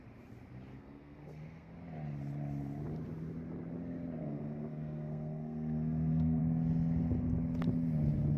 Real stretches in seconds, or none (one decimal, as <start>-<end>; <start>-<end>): 0.0-0.7; 1.7-4.2; 6.4-8.4